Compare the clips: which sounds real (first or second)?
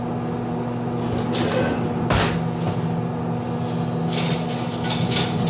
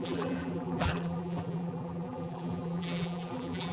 first